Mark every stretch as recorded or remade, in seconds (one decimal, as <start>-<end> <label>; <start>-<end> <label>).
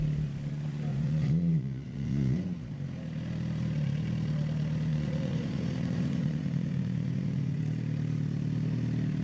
0.0-0.9 recorded; 0.9-2.6 remade; 2.6-4.9 recorded; 4.9-7.6 remade; 7.6-9.2 recorded